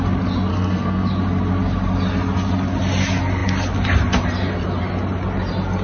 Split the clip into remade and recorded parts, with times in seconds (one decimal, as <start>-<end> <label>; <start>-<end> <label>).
0.0-0.5 recorded; 0.5-1.1 remade; 1.1-5.8 recorded